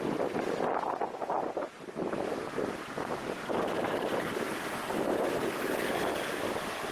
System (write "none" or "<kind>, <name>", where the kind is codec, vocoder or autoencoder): none